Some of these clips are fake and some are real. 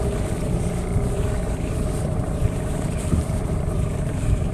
fake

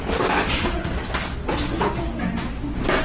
real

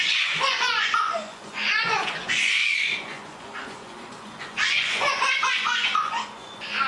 fake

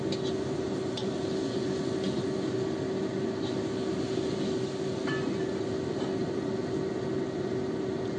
real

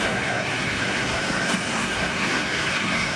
fake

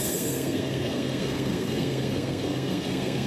fake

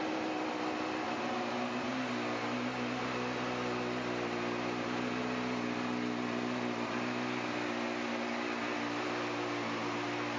real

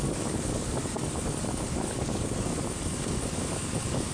fake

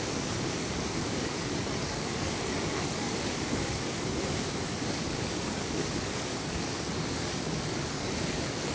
fake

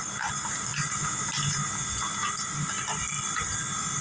real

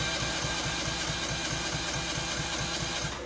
real